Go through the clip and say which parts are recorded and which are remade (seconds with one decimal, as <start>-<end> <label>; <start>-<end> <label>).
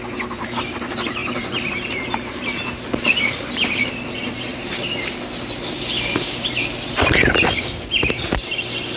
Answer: 0.0-1.2 recorded; 1.2-3.9 remade; 3.9-4.5 recorded; 4.5-5.2 remade; 5.2-9.0 recorded